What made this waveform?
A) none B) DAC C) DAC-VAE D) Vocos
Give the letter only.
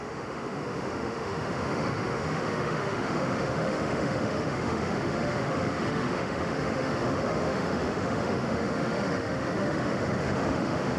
C